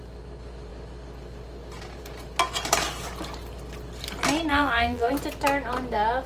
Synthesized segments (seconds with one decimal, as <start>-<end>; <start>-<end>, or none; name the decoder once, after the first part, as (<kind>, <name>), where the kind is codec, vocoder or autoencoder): 4.5-5.1 (vocoder, BigVGAN v2)